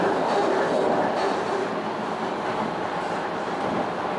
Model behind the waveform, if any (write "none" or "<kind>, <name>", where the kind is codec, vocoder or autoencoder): none